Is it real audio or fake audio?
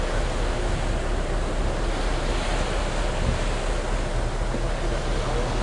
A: real